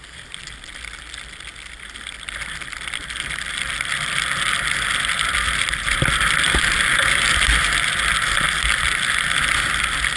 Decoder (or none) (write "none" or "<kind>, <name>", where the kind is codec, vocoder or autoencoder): none